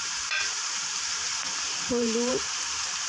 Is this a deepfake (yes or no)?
yes